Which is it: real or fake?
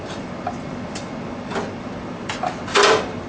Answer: real